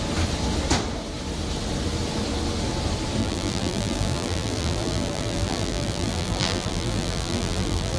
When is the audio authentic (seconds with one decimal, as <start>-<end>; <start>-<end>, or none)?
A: 0.0-3.2